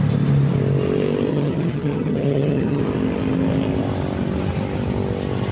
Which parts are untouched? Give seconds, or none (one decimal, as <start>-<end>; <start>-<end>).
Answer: 0.0-1.3; 2.8-5.5

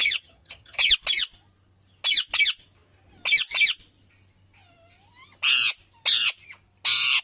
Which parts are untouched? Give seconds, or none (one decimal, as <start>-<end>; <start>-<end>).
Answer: 0.9-7.2

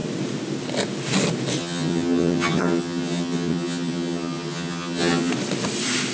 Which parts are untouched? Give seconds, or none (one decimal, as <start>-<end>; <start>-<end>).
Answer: 0.0-1.6; 5.3-6.1

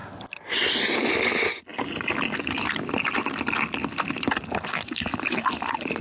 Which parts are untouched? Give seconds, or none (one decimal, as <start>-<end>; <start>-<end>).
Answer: 0.0-6.0